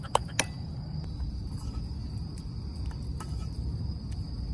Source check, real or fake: real